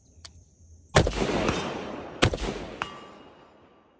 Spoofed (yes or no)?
no